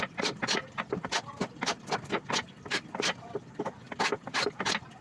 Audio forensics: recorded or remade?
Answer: recorded